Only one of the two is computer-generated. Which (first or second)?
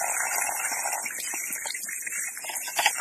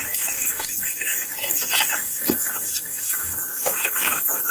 second